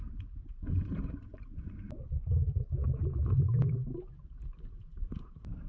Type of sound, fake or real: fake